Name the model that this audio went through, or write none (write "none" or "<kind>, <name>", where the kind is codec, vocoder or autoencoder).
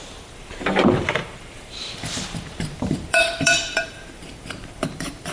vocoder, BigVGAN v2